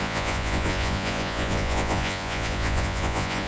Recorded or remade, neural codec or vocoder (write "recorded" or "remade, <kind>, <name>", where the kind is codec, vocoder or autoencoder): remade, vocoder, Vocos